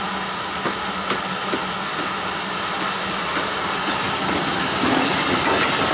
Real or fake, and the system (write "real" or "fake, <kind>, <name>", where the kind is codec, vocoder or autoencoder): real